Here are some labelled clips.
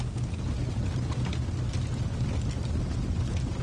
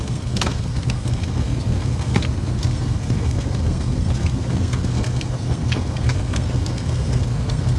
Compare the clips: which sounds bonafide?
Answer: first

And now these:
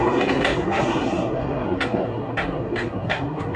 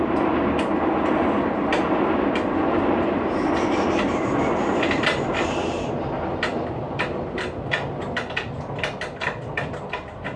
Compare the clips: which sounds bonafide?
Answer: second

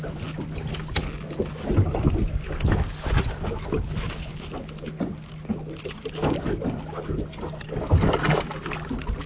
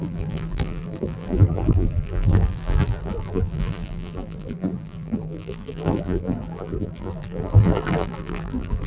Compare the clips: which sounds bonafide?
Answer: first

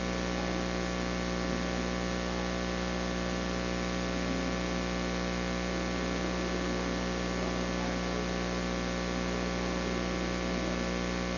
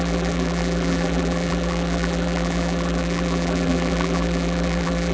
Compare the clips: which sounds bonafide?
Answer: first